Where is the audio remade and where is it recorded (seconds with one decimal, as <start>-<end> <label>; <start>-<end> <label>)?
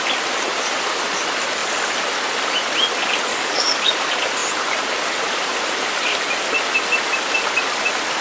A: 0.0-3.3 recorded; 3.3-3.9 remade; 3.9-8.2 recorded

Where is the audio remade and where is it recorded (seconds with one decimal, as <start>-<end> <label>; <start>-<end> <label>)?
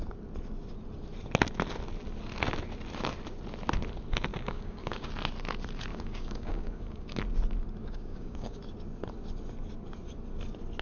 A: 0.0-4.3 recorded; 4.3-5.1 remade; 5.1-5.9 recorded; 5.9-7.2 remade; 7.2-7.8 recorded; 7.8-8.6 remade; 8.6-10.8 recorded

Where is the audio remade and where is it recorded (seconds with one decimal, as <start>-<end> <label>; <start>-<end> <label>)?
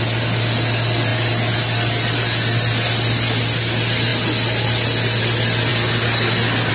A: 0.0-6.7 recorded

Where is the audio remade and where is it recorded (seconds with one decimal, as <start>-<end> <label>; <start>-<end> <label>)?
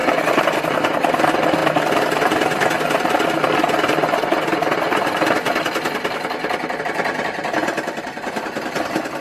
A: 0.0-9.2 recorded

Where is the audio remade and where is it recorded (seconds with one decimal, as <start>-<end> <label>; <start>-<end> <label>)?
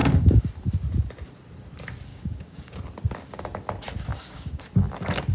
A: 0.0-0.5 remade; 0.5-2.1 recorded; 2.1-2.7 remade; 2.7-4.1 recorded; 4.1-4.6 remade; 4.6-5.3 recorded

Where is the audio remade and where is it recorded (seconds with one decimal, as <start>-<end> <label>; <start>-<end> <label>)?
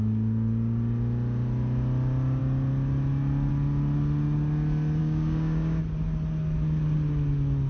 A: 0.0-5.0 recorded; 5.0-5.8 remade; 5.8-7.7 recorded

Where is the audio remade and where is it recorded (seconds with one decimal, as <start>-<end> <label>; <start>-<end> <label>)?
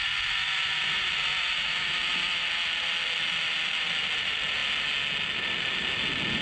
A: 0.0-6.4 recorded